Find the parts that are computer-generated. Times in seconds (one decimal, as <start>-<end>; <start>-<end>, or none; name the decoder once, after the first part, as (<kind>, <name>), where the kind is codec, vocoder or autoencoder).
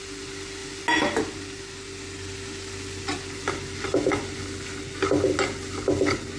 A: none